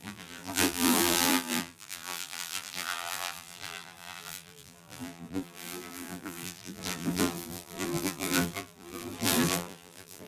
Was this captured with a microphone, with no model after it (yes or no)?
no